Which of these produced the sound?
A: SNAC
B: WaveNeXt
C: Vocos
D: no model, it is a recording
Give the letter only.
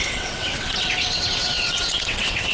B